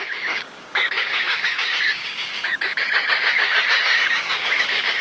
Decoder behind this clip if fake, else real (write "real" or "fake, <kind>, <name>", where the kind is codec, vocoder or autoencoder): fake, codec, DAC